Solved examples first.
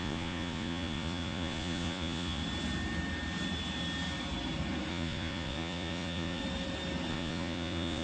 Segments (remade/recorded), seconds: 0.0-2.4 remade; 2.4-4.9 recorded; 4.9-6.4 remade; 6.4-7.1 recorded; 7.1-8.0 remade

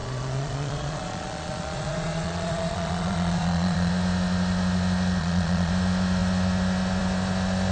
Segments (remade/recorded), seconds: 0.0-3.9 remade; 3.9-5.2 recorded; 5.2-5.7 remade; 5.7-7.7 recorded

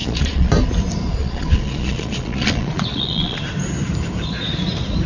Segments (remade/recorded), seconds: 0.0-0.5 remade; 0.5-1.2 recorded; 1.2-3.4 remade; 3.4-5.1 recorded

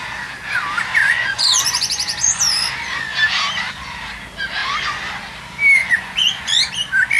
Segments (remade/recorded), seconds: 0.0-1.0 recorded; 1.0-2.4 remade; 2.4-5.8 recorded; 5.8-6.6 remade; 6.6-7.2 recorded